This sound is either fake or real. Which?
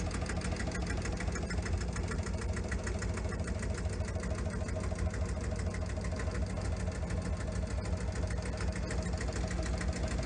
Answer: real